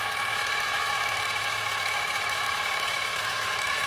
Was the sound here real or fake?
fake